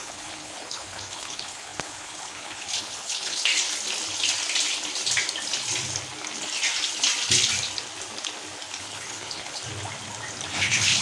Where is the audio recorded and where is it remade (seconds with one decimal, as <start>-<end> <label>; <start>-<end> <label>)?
0.0-3.5 remade; 3.5-8.8 recorded; 8.8-9.6 remade; 9.6-10.5 recorded; 10.5-11.0 remade